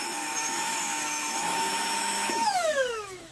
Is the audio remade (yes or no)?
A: yes